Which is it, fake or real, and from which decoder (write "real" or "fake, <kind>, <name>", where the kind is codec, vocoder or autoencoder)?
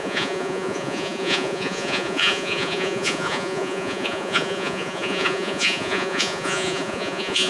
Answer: fake, vocoder, Vocos